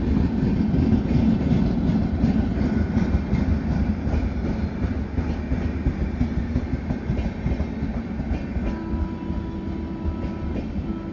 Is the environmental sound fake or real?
real